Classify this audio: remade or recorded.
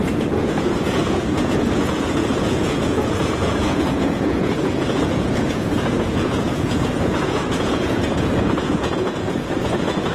remade